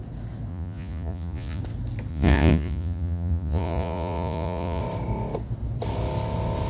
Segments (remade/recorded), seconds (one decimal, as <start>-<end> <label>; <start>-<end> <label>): 0.0-0.5 recorded; 0.5-1.6 remade; 1.6-2.1 recorded; 2.1-4.8 remade; 4.8-6.7 recorded